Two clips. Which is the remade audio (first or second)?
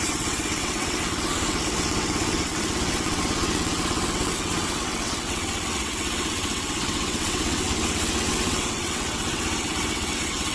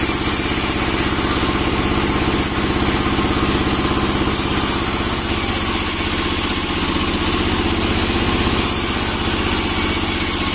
first